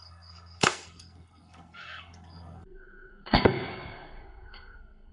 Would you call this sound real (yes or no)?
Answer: no